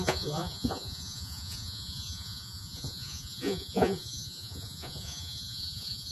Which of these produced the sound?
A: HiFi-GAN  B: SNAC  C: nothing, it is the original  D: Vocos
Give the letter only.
D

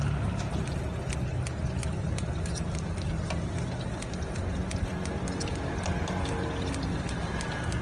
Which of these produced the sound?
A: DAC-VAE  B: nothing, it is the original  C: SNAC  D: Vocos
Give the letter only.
B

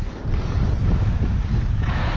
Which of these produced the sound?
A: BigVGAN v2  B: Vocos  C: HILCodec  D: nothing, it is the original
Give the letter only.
D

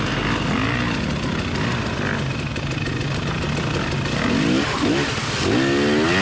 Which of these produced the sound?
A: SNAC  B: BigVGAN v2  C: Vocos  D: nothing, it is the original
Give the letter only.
D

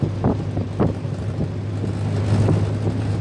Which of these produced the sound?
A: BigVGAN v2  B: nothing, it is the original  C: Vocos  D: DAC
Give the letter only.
B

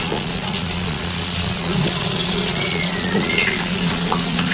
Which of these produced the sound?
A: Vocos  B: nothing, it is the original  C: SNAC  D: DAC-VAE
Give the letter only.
A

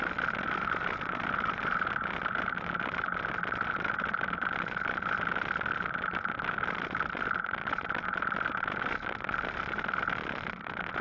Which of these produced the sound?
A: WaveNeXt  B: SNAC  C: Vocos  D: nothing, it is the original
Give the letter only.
D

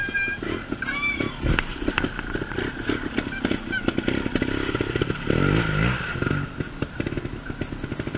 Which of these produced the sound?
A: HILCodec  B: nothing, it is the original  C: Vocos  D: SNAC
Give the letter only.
B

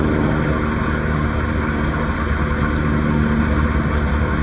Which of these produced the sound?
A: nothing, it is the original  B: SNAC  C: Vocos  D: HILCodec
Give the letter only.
A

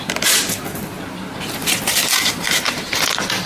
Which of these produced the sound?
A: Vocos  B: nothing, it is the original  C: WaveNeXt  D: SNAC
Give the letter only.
B